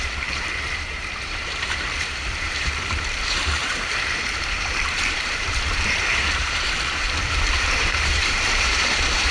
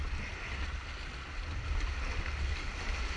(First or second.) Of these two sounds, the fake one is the first